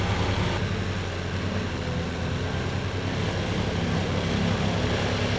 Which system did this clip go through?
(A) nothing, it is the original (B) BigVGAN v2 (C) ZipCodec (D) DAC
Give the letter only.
A